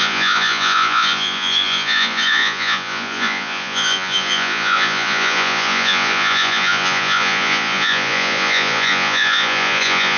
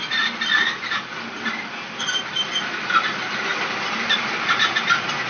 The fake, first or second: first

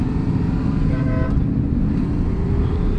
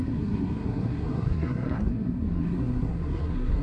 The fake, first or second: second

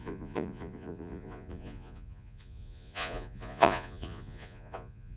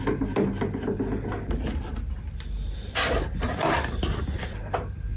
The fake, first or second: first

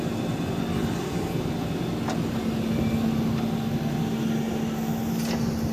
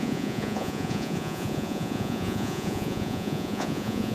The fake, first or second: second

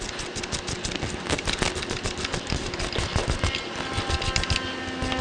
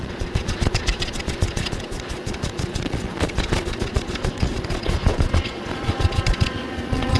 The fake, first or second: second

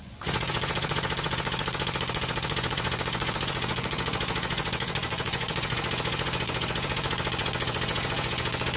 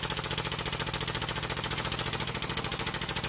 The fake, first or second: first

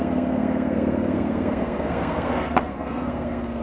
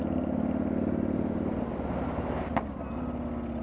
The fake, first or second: first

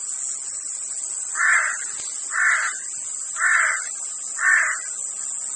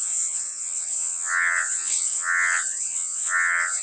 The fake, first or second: second